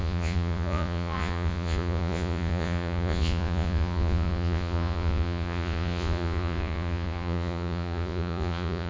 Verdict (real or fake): fake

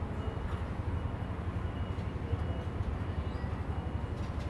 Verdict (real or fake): real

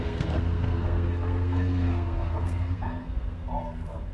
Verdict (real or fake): fake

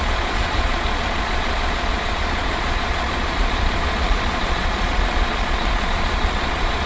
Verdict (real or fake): fake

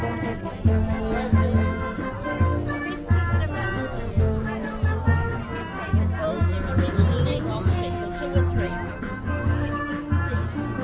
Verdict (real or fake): real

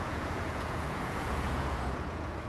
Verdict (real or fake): fake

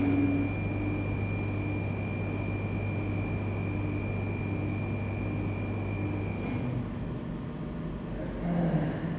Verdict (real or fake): real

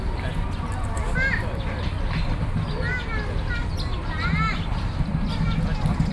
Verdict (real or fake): real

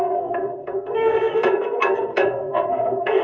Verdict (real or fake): fake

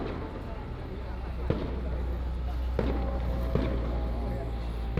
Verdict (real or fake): real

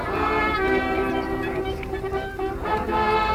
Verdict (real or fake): fake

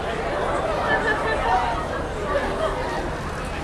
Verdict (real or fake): real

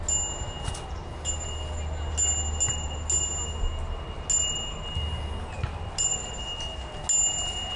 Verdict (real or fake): real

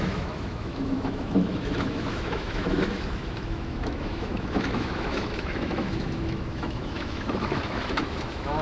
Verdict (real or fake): fake